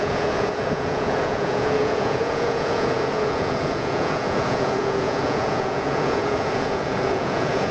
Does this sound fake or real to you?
fake